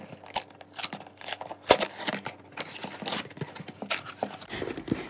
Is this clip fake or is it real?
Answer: real